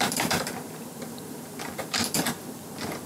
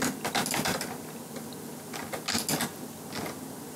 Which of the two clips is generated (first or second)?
first